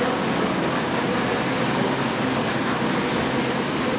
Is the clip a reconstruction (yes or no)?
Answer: no